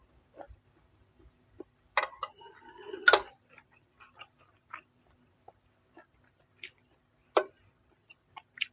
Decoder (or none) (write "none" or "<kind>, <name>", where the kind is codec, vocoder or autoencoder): none